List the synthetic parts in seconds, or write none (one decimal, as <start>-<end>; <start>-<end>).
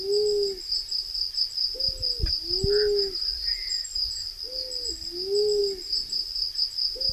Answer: none